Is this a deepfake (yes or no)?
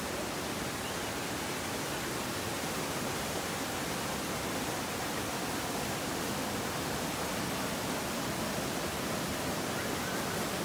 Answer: no